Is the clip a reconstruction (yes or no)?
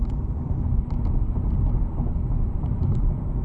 no